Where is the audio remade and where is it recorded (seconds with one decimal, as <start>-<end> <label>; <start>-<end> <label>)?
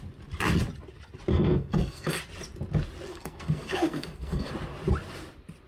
0.0-1.3 recorded; 1.3-2.2 remade; 2.2-3.1 recorded; 3.1-4.5 remade; 4.5-5.7 recorded